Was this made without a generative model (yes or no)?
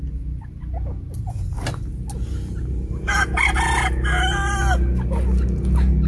yes